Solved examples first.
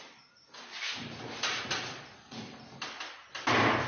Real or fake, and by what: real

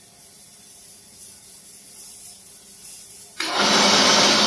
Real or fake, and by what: real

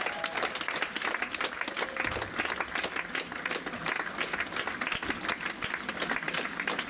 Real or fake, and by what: real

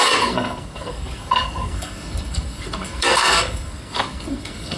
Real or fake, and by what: fake, codec, SNAC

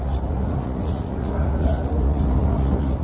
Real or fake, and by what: fake, vocoder, Vocos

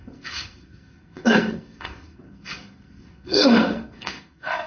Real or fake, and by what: fake, codec, SNAC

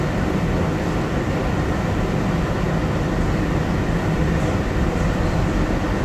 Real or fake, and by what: real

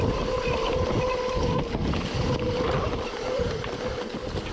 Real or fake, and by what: real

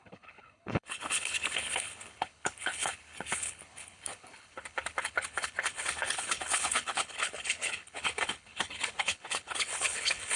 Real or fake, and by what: fake, codec, HILCodec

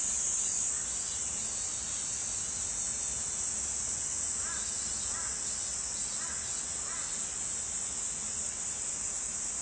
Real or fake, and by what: real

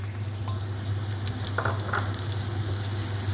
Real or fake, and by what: real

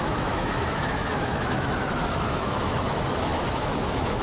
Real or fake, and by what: fake, autoencoder, DAC-VAE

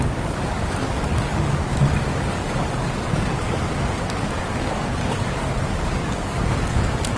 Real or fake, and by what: fake, codec, DAC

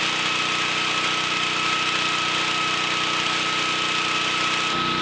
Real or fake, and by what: real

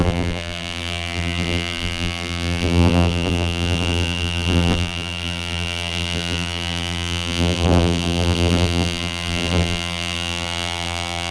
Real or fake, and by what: fake, vocoder, BigVGAN v2